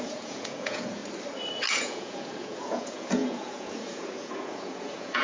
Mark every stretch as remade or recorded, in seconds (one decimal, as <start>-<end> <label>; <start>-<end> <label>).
0.0-1.0 remade; 1.0-1.8 recorded; 1.8-5.2 remade